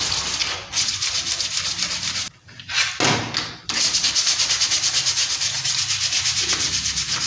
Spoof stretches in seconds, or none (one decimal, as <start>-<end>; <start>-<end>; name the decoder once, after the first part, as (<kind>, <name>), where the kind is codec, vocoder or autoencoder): none